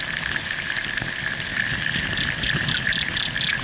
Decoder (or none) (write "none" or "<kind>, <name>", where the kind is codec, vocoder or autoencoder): none